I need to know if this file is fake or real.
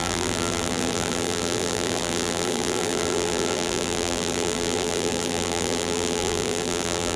fake